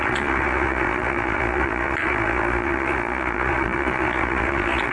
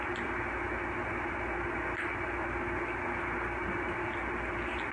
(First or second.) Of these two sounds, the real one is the second